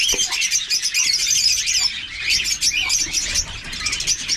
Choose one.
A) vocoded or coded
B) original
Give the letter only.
B